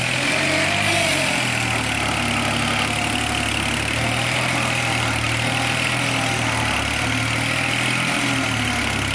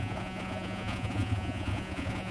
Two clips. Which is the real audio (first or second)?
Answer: first